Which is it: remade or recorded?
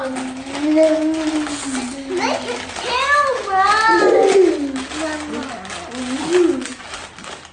recorded